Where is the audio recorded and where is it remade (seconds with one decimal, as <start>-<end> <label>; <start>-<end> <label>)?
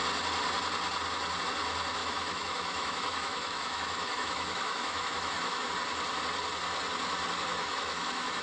0.0-2.0 recorded; 2.0-5.7 remade; 5.7-7.5 recorded; 7.5-8.4 remade